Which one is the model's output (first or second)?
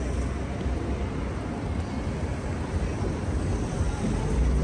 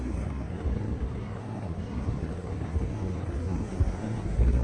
second